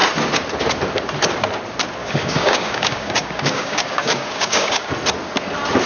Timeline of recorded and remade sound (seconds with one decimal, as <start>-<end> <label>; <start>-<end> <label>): 0.0-2.0 recorded; 2.0-4.9 remade; 4.9-5.9 recorded